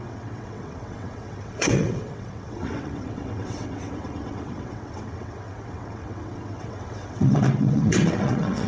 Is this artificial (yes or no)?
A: yes